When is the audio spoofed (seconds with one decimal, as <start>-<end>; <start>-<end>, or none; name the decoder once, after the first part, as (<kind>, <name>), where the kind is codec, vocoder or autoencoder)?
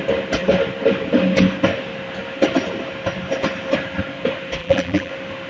4.6-5.1 (vocoder, BigVGAN v2)